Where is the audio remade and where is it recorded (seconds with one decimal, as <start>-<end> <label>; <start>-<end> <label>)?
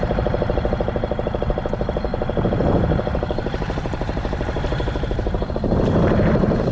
0.0-6.7 remade